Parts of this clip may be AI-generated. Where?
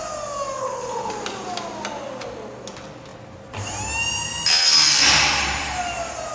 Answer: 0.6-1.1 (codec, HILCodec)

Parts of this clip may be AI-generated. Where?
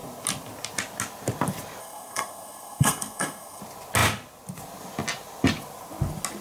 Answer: 1.8-3.6 (codec, SNAC)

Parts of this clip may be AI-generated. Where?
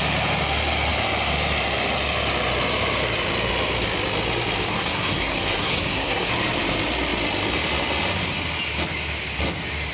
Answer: 4.7-6.3 (codec, SNAC)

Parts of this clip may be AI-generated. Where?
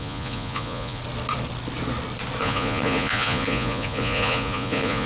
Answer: 0.0-1.0 (vocoder, Vocos); 2.4-5.1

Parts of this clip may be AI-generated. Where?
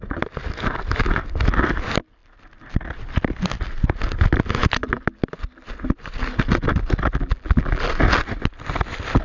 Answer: 7.1-7.9 (vocoder, BigVGAN v2)